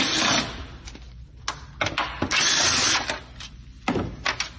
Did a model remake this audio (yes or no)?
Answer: no